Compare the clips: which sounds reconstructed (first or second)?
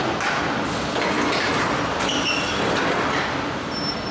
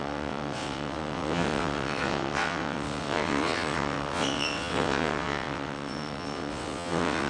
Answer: second